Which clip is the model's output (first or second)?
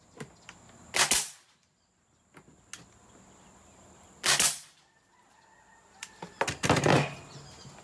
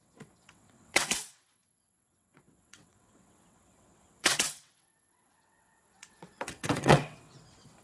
second